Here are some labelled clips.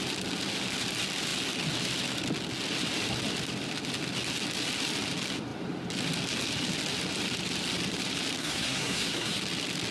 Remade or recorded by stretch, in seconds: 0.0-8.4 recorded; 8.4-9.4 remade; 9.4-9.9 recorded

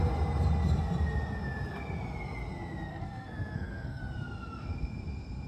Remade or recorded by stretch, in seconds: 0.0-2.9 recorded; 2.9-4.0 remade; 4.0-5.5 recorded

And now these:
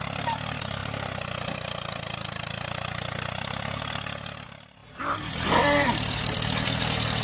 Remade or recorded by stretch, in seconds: 0.0-7.2 recorded

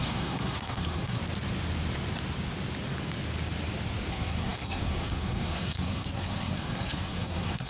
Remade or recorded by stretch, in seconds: 0.0-1.2 remade; 1.2-4.1 recorded; 4.1-7.7 remade

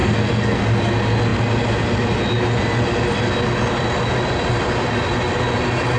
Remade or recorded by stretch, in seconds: 0.0-0.6 remade; 0.6-6.0 recorded